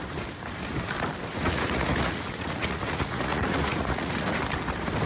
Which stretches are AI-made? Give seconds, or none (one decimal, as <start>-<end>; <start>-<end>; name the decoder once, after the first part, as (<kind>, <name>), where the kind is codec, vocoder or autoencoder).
1.3-4.4 (vocoder, Vocos)